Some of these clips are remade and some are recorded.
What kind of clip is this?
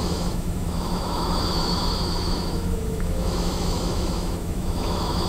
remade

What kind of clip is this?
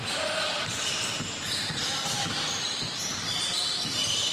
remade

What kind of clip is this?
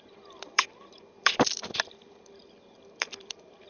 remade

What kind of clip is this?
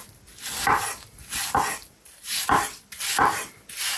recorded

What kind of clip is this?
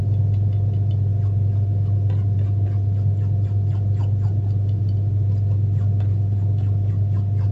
recorded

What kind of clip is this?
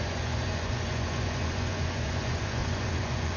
remade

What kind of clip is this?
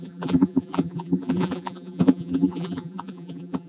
remade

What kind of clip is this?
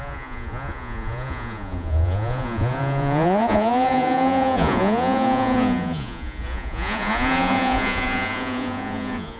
remade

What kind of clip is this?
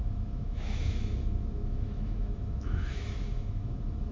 remade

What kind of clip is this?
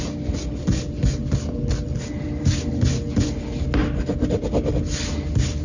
recorded